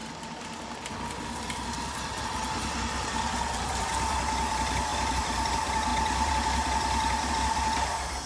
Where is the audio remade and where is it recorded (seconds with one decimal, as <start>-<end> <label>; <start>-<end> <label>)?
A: 0.0-4.9 recorded; 4.9-5.5 remade; 5.5-8.3 recorded